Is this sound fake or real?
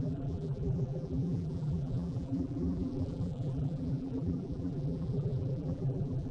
fake